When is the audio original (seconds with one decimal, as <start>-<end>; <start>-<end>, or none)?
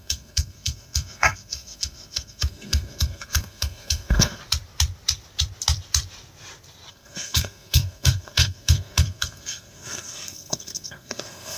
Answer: 4.4-6.9